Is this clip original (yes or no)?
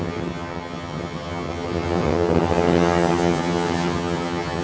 no